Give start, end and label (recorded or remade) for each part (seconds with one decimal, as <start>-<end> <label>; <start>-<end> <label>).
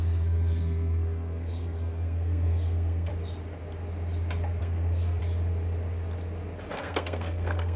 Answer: 0.0-3.1 remade; 3.1-4.6 recorded; 4.6-5.2 remade; 5.2-6.7 recorded; 6.7-7.8 remade